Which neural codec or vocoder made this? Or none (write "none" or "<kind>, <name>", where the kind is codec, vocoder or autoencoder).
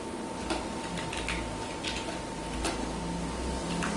none